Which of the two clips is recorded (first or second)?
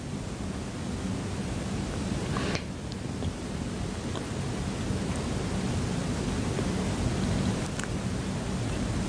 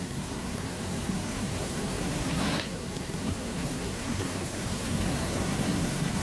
first